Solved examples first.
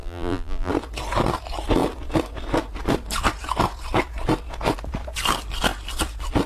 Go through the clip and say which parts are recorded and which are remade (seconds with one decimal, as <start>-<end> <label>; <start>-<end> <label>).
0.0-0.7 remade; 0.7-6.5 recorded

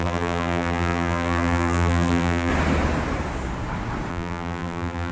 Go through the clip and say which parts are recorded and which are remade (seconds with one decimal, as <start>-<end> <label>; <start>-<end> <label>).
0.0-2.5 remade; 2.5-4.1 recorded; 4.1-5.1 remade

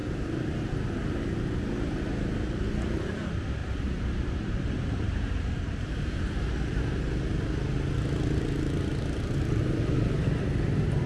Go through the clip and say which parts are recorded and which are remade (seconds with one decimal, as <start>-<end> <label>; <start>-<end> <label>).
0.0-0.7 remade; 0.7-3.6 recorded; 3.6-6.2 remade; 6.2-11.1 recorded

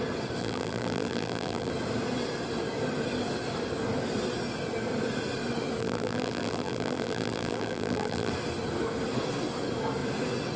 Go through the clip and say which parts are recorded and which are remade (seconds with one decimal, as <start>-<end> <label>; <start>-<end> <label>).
0.0-0.4 recorded; 0.4-1.7 remade; 1.7-5.8 recorded; 5.8-8.3 remade; 8.3-10.6 recorded

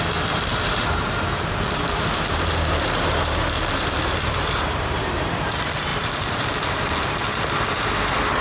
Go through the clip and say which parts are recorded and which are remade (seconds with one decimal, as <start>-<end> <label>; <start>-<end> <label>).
0.0-0.5 recorded; 0.5-5.5 remade; 5.5-5.9 recorded; 5.9-7.1 remade; 7.1-8.4 recorded

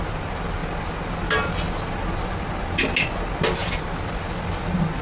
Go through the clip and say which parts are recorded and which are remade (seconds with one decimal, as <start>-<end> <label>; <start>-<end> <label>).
0.0-5.0 recorded

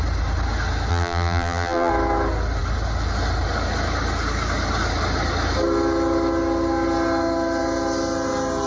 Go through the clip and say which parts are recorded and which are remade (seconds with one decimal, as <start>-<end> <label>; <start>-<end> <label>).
0.0-0.9 recorded; 0.9-1.9 remade; 1.9-8.7 recorded